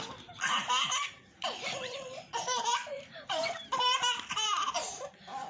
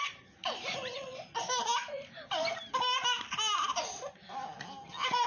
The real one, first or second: second